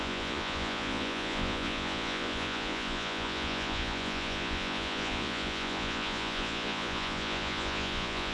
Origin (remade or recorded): remade